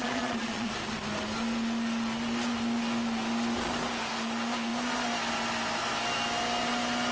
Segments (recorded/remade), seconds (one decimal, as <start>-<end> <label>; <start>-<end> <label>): 0.0-0.7 remade; 0.7-7.1 recorded